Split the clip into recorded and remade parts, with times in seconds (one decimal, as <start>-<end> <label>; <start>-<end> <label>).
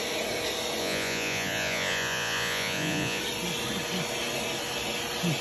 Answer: 0.0-0.8 recorded; 0.8-3.2 remade; 3.2-5.4 recorded